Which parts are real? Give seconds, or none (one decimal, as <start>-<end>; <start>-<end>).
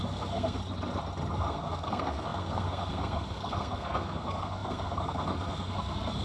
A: 0.6-1.3